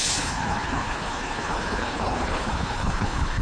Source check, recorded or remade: remade